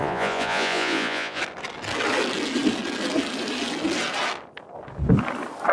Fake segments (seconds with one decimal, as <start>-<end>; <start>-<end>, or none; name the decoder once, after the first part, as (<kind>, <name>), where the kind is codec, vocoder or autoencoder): 0.0-1.4 (vocoder, Vocos)